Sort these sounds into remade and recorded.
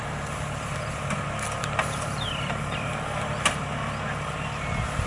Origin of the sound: recorded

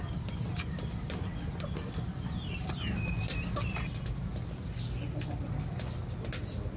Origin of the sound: recorded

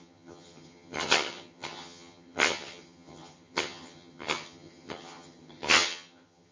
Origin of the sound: remade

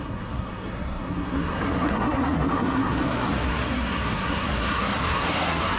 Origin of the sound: remade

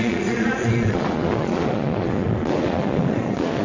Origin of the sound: remade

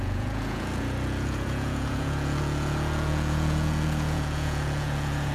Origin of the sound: remade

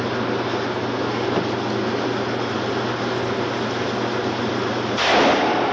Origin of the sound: recorded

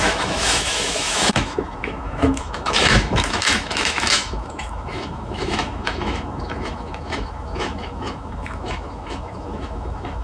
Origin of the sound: remade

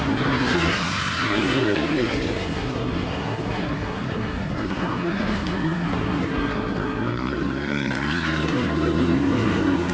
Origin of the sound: remade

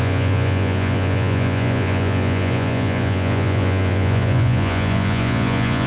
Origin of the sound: remade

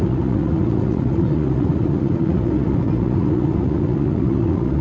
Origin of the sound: remade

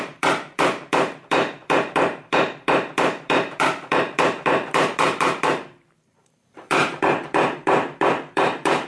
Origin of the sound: remade